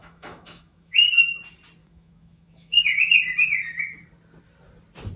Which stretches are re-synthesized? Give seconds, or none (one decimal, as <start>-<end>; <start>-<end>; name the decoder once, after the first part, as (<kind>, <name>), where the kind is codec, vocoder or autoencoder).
0.0-1.1 (autoencoder, DAC-VAE); 1.8-3.1